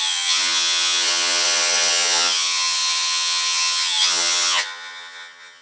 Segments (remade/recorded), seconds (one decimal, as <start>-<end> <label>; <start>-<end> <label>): 0.0-5.6 remade